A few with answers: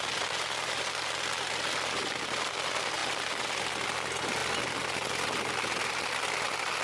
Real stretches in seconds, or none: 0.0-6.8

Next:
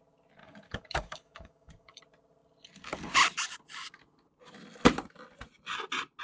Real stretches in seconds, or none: 0.0-0.4; 2.0-6.2

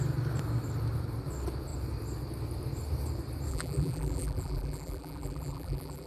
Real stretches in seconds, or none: 0.0-3.5

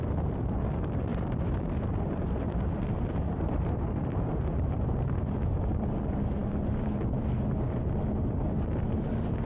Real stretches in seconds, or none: 0.0-1.1; 5.2-9.5

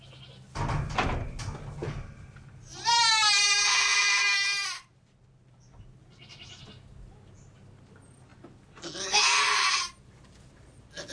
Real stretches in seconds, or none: 0.0-1.8; 3.3-3.9; 6.6-11.1

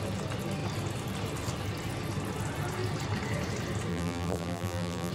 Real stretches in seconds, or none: 0.0-3.9